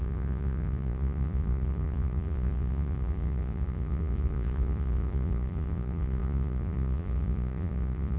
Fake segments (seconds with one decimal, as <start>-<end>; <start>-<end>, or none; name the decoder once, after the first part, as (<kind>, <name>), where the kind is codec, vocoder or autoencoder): 0.0-8.2 (vocoder, Vocos)